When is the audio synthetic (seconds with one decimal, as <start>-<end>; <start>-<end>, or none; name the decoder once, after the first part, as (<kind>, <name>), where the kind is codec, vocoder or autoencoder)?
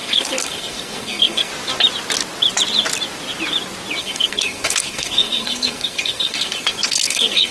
0.0-1.5 (codec, SNAC); 4.0-7.5